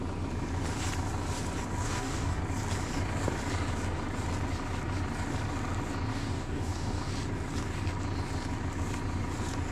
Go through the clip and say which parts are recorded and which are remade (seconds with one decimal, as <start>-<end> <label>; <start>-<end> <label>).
0.0-1.8 recorded; 1.8-2.4 remade; 2.4-6.1 recorded; 6.1-7.1 remade; 7.1-9.7 recorded